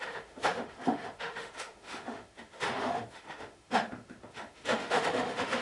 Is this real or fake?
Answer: fake